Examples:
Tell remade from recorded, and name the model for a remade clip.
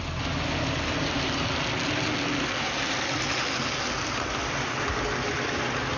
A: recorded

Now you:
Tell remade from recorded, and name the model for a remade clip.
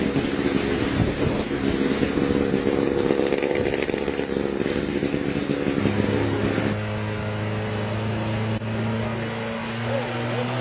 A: recorded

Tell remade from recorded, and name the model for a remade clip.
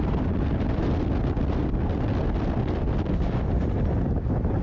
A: recorded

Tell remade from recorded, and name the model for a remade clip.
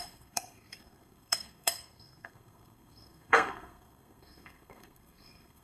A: remade, codec, SNAC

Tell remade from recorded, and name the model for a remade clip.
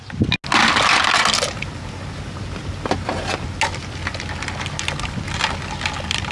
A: recorded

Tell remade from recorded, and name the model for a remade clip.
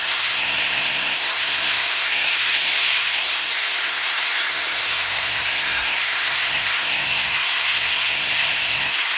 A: remade, codec, SNAC